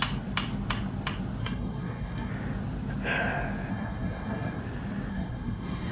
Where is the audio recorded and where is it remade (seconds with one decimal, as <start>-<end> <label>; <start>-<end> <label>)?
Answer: 0.0-1.4 recorded; 1.4-2.3 remade; 2.3-3.7 recorded; 3.7-4.6 remade; 4.6-5.1 recorded; 5.1-5.9 remade